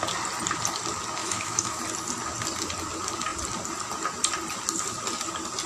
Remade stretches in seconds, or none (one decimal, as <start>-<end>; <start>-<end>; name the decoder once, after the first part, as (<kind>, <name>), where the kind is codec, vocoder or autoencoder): 1.2-1.8 (autoencoder, DAC-VAE)